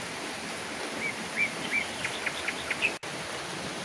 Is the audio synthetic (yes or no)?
no